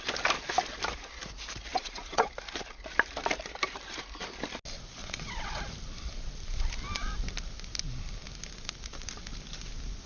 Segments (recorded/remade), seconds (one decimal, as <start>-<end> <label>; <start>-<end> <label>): 0.0-1.7 recorded; 1.7-2.3 remade; 2.3-5.0 recorded; 5.0-5.6 remade; 5.6-10.1 recorded